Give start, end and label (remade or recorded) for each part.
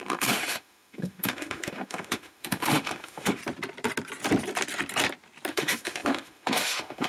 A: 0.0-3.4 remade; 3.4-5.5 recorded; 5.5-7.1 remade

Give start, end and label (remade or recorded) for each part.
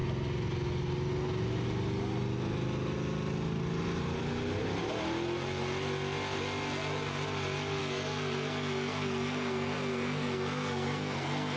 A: 0.0-7.8 recorded; 7.8-11.6 remade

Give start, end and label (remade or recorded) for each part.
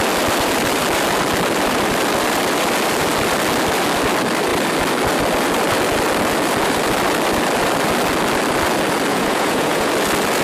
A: 0.0-9.1 recorded; 9.1-9.9 remade; 9.9-10.4 recorded